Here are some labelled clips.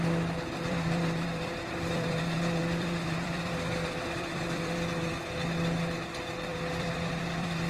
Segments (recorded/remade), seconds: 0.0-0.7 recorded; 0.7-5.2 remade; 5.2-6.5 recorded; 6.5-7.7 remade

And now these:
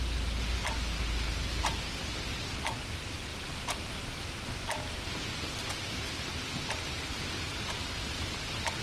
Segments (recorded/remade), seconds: 0.0-8.8 recorded

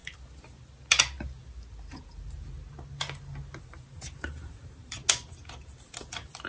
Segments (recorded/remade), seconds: 0.0-3.6 recorded; 3.6-5.0 remade; 5.0-6.5 recorded

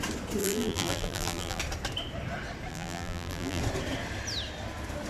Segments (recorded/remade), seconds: 0.0-0.4 recorded; 0.4-1.6 remade; 1.6-2.7 recorded; 2.7-3.6 remade; 3.6-5.1 recorded